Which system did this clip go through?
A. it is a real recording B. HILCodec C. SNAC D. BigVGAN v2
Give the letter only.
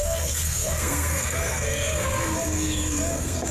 C